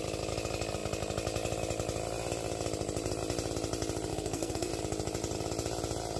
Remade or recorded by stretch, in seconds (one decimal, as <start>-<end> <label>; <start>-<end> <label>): 0.0-4.1 recorded; 4.1-4.7 remade; 4.7-6.2 recorded